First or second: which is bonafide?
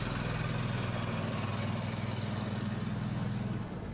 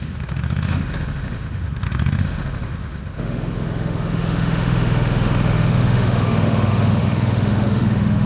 first